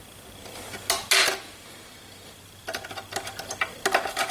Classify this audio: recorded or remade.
recorded